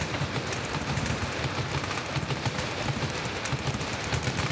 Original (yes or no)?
no